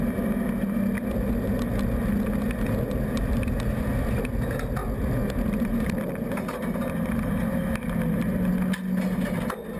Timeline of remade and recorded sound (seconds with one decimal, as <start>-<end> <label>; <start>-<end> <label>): 0.0-9.8 recorded